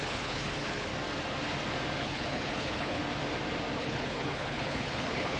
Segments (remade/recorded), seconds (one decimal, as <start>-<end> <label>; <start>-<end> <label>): 0.0-0.9 remade; 0.9-2.0 recorded; 2.0-3.0 remade; 3.0-3.8 recorded; 3.8-5.4 remade